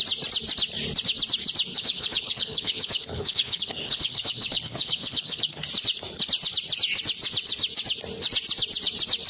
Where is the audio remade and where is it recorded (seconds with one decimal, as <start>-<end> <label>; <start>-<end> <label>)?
0.0-1.7 recorded; 1.7-5.6 remade; 5.6-9.3 recorded